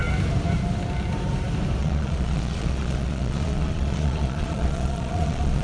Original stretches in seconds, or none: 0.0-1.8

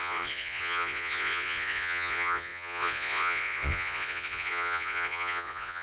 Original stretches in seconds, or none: none

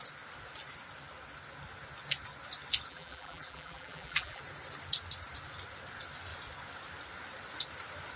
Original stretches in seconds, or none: 0.0-2.9; 4.4-8.2

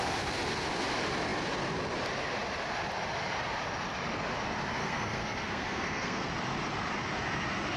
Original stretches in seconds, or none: 0.0-4.8; 6.3-7.8

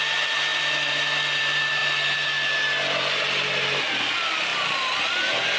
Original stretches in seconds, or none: 0.0-5.6

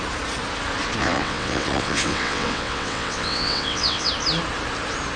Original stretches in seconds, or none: 0.0-1.0; 4.1-5.2

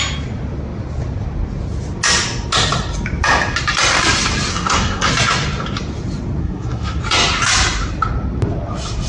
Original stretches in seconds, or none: 0.0-4.5; 5.1-6.4; 7.0-9.1